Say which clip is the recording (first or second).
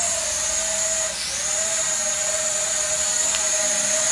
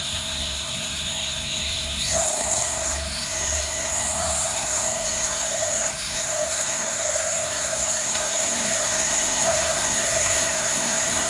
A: first